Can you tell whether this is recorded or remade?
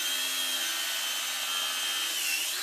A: recorded